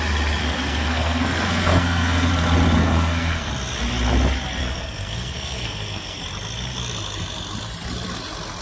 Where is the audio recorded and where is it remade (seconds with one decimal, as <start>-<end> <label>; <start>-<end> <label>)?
0.0-0.4 recorded; 0.4-2.3 remade; 2.3-2.8 recorded; 2.8-3.5 remade; 3.5-4.6 recorded; 4.6-6.2 remade; 6.2-8.6 recorded